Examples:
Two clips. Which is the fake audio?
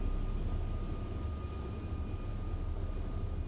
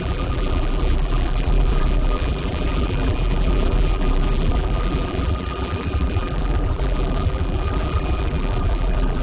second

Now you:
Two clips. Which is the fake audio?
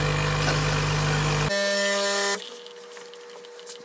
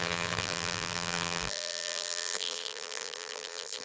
second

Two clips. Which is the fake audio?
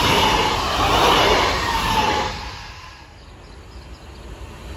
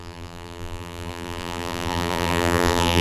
second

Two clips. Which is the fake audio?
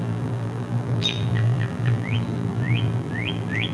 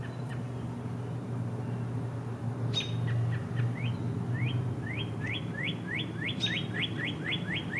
first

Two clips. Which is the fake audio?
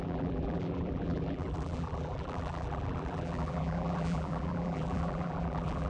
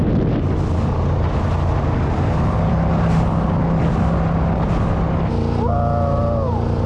first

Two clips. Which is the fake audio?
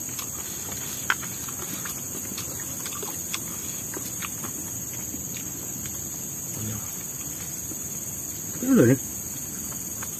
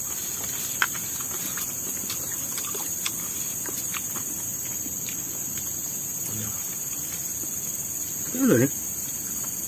second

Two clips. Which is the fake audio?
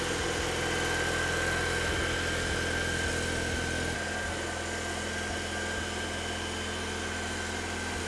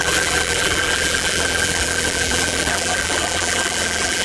second